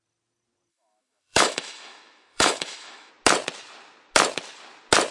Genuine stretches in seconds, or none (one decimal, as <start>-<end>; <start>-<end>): 0.0-0.7; 3.1-5.1